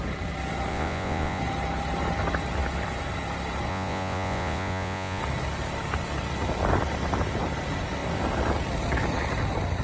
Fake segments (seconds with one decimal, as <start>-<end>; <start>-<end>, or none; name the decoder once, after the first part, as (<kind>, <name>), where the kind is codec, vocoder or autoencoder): 0.7-1.4 (vocoder, Vocos); 3.7-5.2